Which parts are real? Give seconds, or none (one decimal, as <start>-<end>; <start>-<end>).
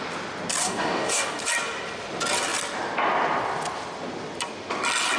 0.0-0.6; 1.4-5.2